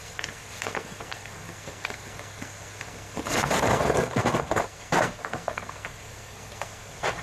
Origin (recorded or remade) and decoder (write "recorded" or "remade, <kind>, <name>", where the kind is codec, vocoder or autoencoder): remade, codec, SNAC